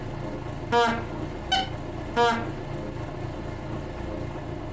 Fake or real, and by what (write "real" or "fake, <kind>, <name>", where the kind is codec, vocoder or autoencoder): real